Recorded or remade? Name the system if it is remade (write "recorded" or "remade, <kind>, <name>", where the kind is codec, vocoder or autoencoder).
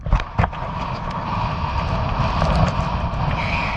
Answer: recorded